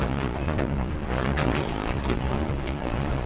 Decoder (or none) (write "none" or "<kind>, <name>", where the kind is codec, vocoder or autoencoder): vocoder, Vocos